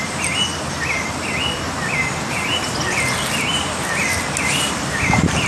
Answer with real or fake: real